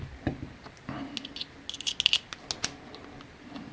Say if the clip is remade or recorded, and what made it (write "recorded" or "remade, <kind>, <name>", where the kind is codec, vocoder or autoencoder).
recorded